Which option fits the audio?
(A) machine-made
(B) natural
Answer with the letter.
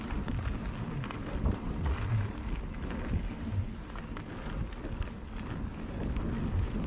B